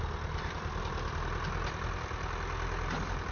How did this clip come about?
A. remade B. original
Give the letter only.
B